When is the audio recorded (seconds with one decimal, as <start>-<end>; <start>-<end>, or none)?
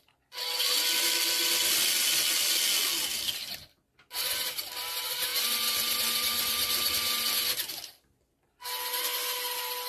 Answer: 0.0-9.9